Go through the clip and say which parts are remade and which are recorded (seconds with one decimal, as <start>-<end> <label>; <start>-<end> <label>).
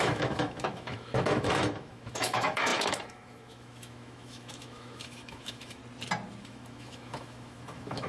0.0-5.8 remade; 5.8-6.4 recorded; 6.4-8.1 remade